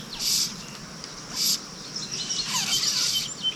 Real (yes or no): yes